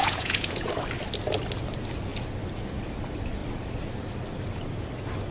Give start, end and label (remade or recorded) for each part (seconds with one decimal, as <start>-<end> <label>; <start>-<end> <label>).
0.0-0.7 remade; 0.7-5.3 recorded